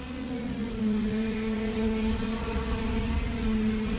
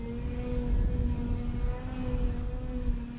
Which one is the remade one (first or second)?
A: first